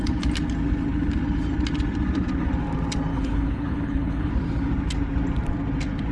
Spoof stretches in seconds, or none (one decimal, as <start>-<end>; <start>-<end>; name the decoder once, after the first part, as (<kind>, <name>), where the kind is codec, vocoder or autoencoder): 3.1-4.3 (codec, HILCodec)

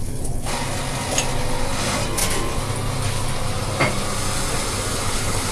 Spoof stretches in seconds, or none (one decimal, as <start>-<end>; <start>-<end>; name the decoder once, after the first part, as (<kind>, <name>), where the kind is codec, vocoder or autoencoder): 0.0-0.5 (codec, HILCodec); 4.9-5.5

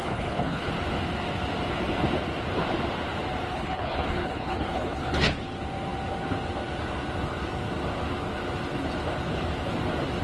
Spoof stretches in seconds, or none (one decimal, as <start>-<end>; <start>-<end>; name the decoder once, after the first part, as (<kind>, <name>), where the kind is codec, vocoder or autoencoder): 0.0-0.7 (codec, HILCodec); 3.5-5.4

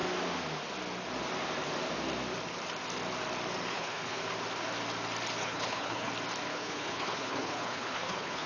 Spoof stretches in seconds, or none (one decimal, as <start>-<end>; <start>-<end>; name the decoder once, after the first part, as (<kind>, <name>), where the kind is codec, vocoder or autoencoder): 3.7-4.2 (codec, HILCodec); 5.4-6.1; 6.5-8.5

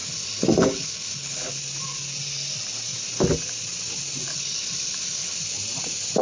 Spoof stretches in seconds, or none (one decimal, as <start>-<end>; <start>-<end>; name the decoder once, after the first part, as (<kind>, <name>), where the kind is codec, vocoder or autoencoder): 0.0-1.5 (codec, HILCodec); 4.3-5.4

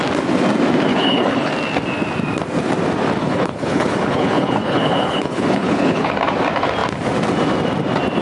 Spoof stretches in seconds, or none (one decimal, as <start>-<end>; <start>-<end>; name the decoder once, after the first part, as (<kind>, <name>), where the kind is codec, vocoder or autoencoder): 0.9-1.5 (codec, HILCodec); 3.2-6.1